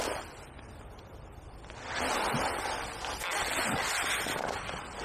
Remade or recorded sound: recorded